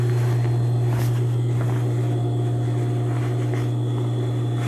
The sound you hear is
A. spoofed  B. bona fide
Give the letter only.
B